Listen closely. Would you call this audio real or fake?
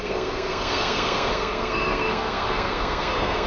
fake